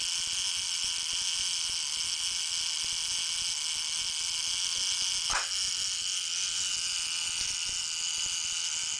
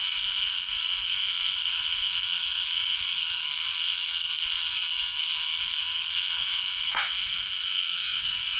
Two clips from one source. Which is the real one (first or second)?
first